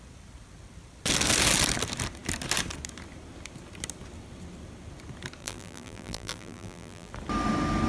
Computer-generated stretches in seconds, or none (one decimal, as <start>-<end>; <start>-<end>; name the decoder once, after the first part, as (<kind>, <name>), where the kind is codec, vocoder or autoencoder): 5.4-7.1 (vocoder, BigVGAN v2)